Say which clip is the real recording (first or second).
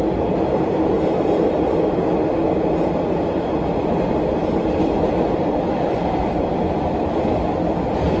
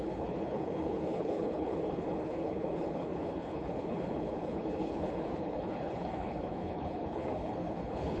first